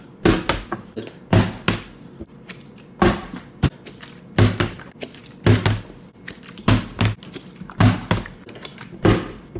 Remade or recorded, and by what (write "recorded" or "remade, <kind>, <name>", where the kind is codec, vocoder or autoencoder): recorded